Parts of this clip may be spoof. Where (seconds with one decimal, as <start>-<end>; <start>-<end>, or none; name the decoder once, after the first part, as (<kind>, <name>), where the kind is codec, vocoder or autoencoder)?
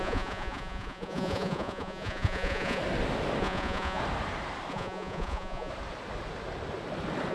0.0-2.8 (vocoder, Vocos); 3.4-4.0; 4.7-5.7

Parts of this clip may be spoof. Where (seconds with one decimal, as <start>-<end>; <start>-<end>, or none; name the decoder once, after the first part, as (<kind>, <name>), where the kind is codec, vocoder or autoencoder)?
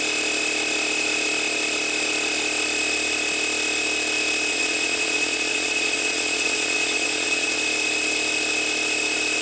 4.5-7.6 (vocoder, Vocos)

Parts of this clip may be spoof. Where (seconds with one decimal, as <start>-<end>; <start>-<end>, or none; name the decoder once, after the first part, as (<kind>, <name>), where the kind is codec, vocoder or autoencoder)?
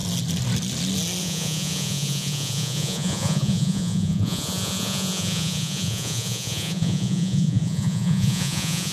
1.2-8.9 (vocoder, Vocos)